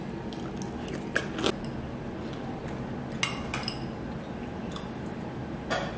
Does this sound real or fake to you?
real